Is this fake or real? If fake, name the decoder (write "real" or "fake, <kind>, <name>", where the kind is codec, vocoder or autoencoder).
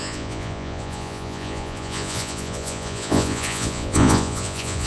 fake, vocoder, Vocos